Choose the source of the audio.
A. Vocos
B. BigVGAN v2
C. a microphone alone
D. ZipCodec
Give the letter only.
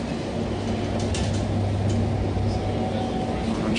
C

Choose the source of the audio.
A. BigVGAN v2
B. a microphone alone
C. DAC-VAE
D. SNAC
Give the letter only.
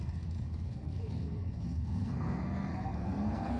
D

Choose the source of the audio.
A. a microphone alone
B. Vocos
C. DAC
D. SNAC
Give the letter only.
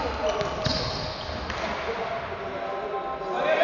A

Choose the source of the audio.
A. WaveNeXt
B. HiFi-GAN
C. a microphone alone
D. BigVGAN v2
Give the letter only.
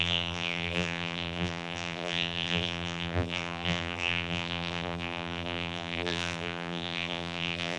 D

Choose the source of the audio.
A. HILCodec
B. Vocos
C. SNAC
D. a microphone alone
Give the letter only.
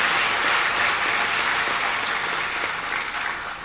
D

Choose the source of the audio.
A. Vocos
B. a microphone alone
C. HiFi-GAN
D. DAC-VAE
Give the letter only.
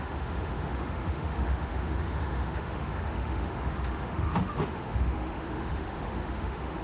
D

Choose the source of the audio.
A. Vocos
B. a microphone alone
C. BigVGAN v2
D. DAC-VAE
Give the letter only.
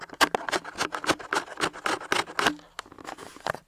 B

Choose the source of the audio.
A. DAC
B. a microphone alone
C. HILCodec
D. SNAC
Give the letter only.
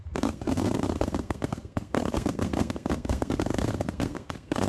D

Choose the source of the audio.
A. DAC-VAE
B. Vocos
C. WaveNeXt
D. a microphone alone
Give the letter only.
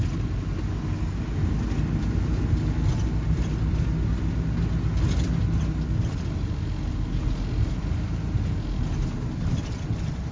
D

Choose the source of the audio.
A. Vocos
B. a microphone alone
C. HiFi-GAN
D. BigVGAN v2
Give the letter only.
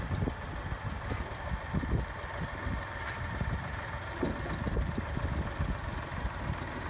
B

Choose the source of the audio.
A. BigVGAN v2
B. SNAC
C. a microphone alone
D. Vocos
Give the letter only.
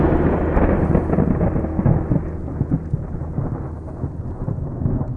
C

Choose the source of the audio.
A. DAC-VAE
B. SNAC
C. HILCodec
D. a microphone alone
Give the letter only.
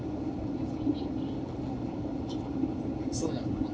D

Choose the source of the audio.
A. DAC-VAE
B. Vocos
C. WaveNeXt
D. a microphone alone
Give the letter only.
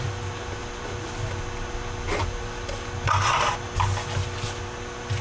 D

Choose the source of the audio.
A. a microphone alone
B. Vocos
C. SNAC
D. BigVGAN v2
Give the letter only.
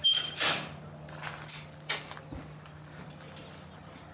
A